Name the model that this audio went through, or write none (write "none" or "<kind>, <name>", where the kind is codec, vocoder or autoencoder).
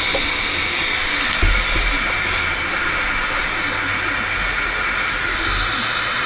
none